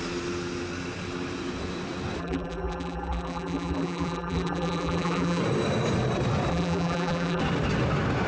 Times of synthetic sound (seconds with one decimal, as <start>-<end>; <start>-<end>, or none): 2.2-5.4; 6.5-7.4